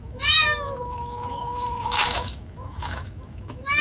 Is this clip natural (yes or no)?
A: no